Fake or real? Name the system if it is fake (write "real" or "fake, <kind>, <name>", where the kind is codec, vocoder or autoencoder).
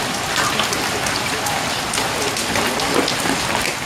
real